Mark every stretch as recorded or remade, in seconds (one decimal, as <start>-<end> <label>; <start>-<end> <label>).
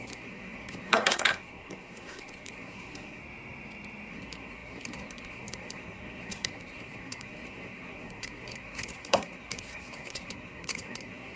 0.0-3.2 remade; 3.2-4.1 recorded; 4.1-11.4 remade